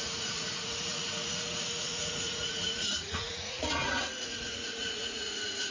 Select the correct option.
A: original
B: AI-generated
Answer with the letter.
B